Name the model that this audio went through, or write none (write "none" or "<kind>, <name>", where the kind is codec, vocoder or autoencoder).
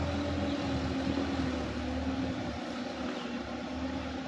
none